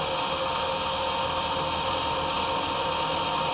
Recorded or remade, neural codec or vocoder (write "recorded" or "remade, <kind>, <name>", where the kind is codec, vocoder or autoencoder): recorded